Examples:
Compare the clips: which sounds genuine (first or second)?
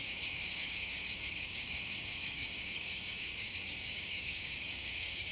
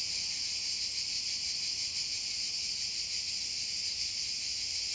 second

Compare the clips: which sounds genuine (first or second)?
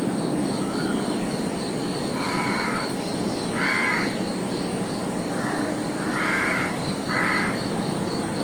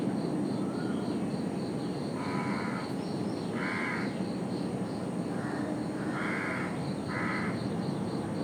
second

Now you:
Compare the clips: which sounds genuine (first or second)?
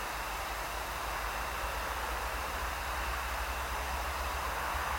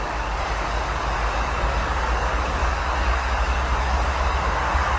first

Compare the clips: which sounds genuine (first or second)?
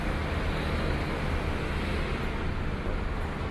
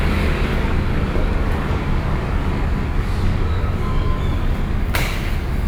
first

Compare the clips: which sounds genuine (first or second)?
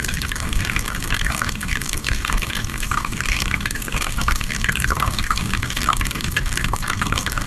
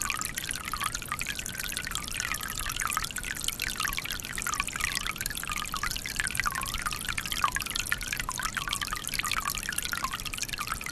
second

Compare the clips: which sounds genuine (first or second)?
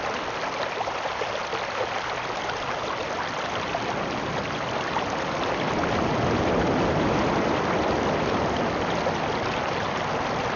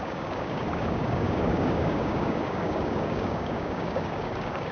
first